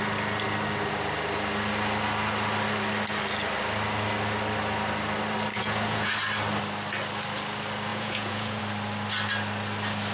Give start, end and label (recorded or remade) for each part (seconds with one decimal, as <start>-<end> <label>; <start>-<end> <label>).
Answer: 0.0-5.5 recorded; 5.5-6.1 remade; 6.1-7.9 recorded; 7.9-8.6 remade; 8.6-10.1 recorded